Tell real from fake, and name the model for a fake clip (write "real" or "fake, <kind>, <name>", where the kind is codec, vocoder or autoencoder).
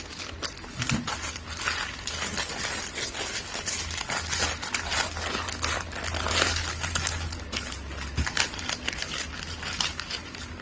real